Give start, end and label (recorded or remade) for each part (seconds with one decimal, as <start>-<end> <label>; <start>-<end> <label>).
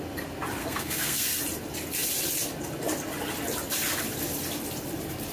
0.0-0.6 recorded; 0.6-1.4 remade; 1.4-5.3 recorded